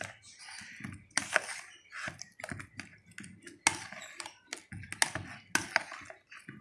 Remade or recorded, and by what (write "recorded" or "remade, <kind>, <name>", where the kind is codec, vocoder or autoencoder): recorded